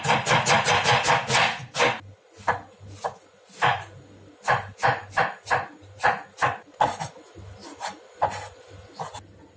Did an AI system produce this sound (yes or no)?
no